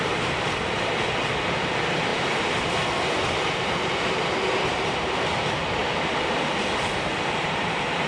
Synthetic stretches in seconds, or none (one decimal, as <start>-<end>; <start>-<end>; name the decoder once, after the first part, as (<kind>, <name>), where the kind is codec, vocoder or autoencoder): none